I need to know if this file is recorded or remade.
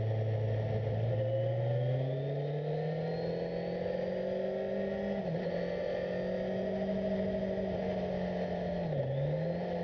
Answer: recorded